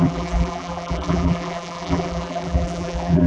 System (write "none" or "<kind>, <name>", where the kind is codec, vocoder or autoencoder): vocoder, BigVGAN v2